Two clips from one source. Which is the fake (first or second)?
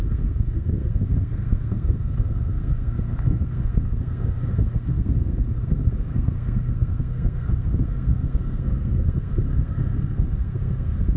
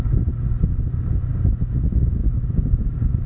first